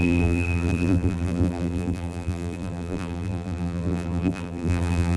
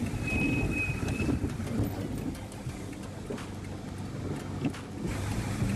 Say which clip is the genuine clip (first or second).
second